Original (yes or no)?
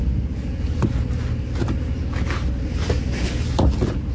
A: yes